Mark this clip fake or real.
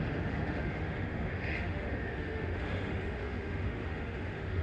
fake